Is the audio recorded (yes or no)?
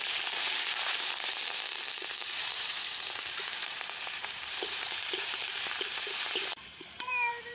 no